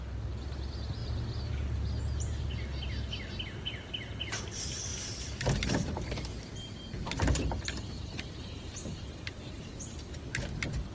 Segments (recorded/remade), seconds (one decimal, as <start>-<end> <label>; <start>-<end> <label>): 0.0-4.9 recorded; 4.9-9.7 remade; 9.7-10.9 recorded